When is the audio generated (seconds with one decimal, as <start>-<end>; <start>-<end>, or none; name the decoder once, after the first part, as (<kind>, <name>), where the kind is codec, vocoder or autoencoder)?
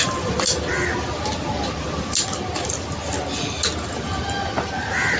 none